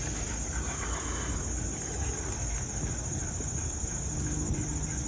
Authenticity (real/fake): real